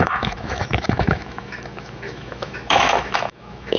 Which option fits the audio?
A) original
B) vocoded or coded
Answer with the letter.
B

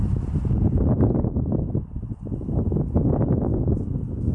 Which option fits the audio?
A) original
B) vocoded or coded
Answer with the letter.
A